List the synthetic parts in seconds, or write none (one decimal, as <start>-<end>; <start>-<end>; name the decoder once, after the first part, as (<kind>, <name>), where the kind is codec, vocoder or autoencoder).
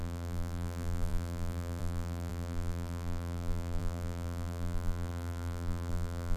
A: 0.0-6.4 (vocoder, BigVGAN v2)